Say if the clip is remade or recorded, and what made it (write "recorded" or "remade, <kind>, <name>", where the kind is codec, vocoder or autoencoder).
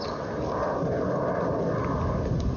recorded